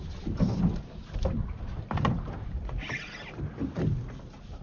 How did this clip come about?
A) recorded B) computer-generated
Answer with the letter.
A